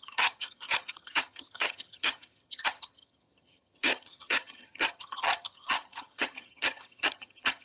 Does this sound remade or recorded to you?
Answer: remade